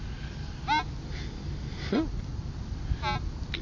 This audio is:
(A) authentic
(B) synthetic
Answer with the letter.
A